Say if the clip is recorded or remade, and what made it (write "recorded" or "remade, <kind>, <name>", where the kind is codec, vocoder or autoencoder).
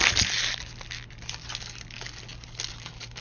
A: recorded